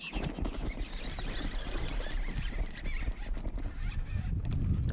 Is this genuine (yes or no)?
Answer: yes